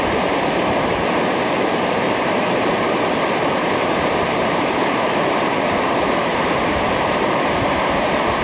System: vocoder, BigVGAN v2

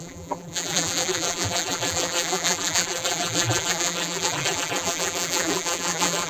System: vocoder, BigVGAN v2